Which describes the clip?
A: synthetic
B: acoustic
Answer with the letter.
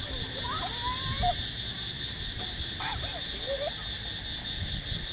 B